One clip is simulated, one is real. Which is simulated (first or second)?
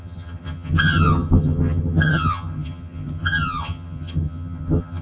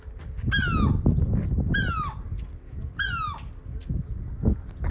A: first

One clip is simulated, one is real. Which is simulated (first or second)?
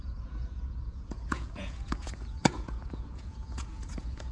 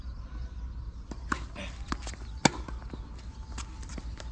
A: first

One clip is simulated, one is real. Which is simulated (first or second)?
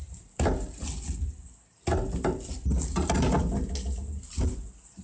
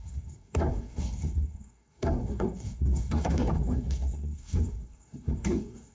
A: second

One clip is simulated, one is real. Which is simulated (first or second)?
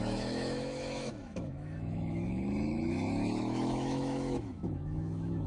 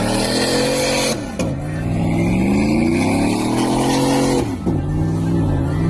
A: first